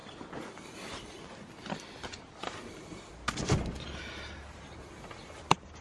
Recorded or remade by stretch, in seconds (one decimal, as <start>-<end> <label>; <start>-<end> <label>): 0.0-5.8 recorded